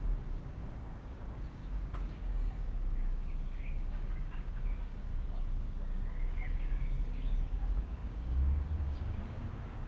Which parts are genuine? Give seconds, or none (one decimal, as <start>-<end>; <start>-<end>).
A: 5.1-5.6